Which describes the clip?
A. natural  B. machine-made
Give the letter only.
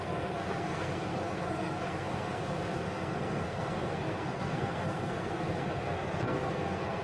B